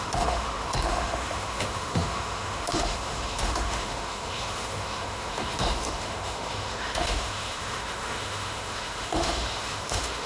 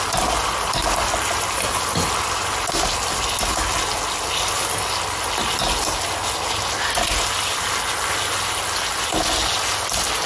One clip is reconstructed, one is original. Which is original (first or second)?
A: second